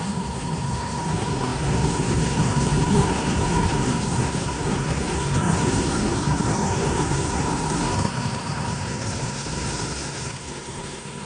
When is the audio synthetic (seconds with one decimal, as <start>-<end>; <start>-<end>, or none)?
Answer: 0.0-11.3